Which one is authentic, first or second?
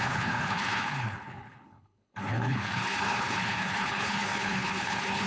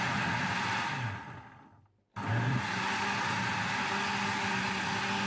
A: second